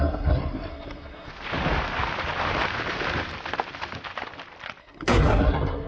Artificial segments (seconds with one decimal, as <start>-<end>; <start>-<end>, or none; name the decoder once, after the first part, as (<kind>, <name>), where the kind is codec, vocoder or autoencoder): 0.0-1.3 (codec, SNAC); 4.8-5.9